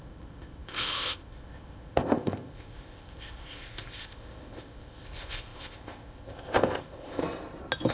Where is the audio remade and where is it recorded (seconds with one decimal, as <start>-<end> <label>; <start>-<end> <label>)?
0.0-7.2 remade; 7.2-7.9 recorded